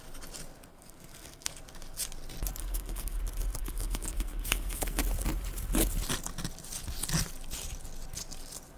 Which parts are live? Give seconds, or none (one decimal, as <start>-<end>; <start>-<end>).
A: 0.0-0.7; 1.5-2.6; 3.2-3.6; 5.0-8.8